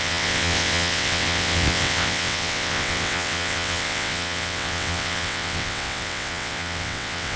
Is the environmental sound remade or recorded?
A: remade